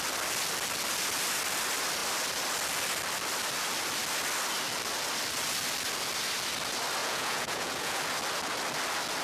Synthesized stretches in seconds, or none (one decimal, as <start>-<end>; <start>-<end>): 7.0-8.0